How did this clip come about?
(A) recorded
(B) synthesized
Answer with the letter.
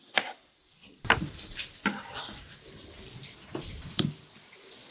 A